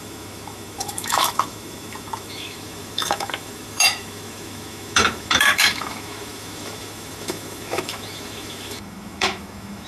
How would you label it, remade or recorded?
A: remade